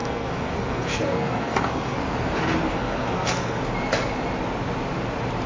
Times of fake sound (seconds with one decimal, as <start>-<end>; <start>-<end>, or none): 0.0-2.0; 2.7-3.6